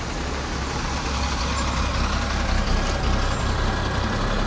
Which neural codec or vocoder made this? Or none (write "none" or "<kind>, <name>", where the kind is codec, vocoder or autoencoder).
none